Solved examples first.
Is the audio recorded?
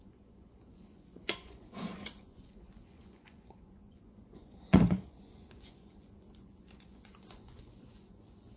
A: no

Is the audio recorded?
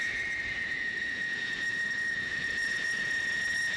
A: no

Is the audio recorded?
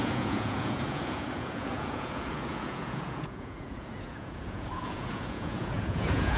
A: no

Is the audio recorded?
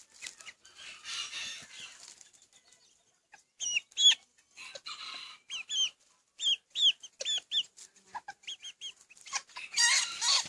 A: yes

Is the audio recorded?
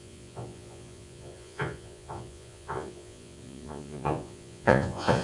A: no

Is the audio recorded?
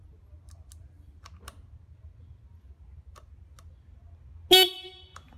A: yes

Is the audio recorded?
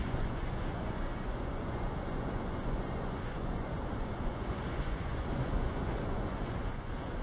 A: no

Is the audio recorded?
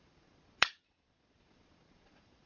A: no